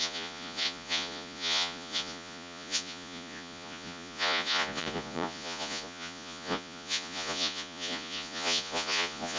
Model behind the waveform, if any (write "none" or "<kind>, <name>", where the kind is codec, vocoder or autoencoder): vocoder, Vocos